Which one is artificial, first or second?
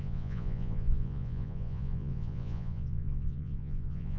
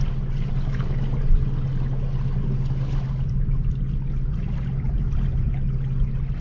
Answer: first